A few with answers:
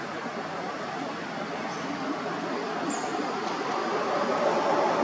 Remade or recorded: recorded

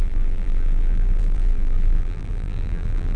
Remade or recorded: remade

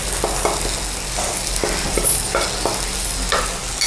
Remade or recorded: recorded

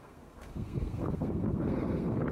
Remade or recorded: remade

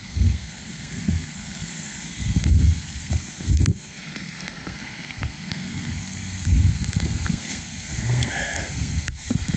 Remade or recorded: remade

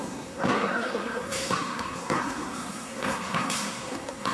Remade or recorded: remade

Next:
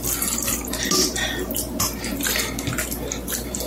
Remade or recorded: recorded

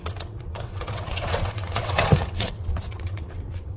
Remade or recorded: remade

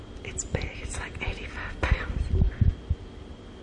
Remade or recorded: recorded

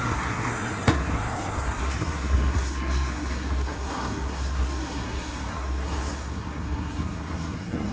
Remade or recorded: remade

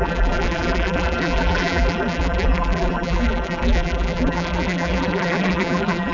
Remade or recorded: remade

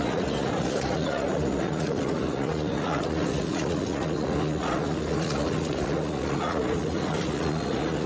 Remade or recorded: remade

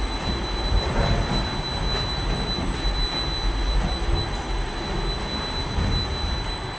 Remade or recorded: recorded